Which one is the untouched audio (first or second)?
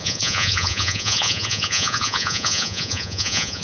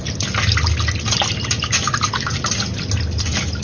second